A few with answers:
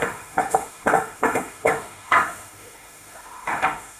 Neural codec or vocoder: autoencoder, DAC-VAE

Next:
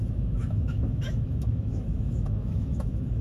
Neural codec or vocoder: autoencoder, DAC-VAE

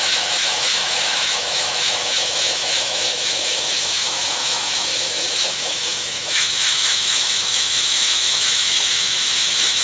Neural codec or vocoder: autoencoder, DAC-VAE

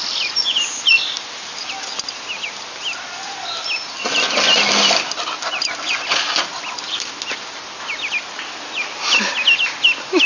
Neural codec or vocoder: none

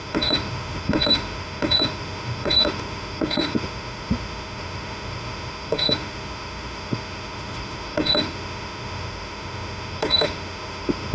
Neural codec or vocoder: autoencoder, DAC-VAE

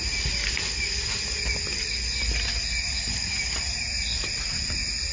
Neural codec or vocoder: none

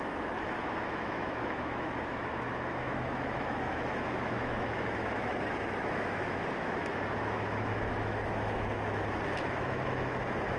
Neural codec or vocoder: autoencoder, DAC-VAE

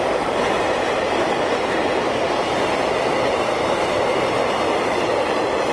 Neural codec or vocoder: none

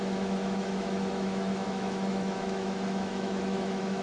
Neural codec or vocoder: autoencoder, DAC-VAE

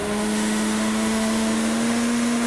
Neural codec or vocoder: autoencoder, DAC-VAE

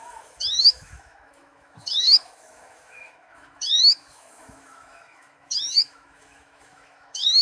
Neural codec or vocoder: autoencoder, DAC-VAE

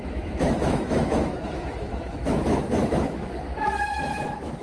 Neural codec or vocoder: autoencoder, DAC-VAE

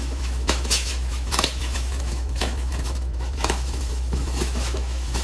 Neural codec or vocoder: autoencoder, DAC-VAE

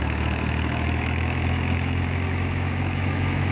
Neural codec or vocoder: autoencoder, DAC-VAE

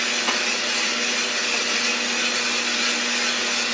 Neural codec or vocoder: none